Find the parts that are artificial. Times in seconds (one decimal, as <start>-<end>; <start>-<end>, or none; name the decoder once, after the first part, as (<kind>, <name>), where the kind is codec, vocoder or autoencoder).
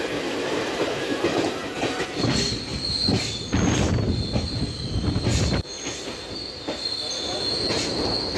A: 1.6-2.2 (vocoder, BigVGAN v2); 2.7-7.0